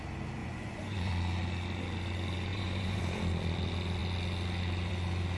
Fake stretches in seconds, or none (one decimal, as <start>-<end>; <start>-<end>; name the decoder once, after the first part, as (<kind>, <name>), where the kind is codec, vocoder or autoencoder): 0.4-1.1 (vocoder, Vocos); 2.5-3.0